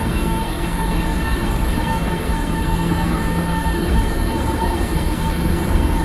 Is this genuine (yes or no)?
no